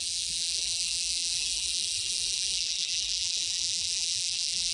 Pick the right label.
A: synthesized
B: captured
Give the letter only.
A